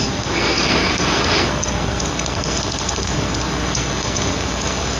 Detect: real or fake fake